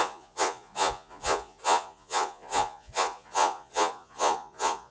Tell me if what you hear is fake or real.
fake